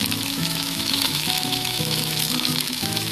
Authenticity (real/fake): fake